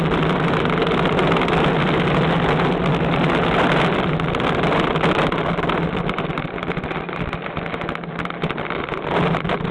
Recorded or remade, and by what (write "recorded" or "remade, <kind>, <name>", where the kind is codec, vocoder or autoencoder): recorded